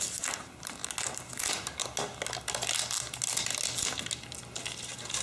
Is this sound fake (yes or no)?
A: no